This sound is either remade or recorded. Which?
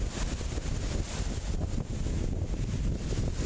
recorded